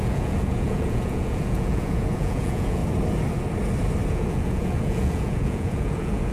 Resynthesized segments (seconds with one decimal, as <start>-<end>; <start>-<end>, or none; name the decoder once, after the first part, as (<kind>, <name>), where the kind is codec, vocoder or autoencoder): 0.0-2.8 (vocoder, Vocos); 4.1-6.3

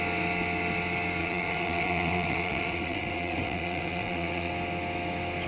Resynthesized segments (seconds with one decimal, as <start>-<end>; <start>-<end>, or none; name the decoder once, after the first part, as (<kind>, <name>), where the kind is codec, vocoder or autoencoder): 1.2-4.5 (vocoder, WaveNeXt)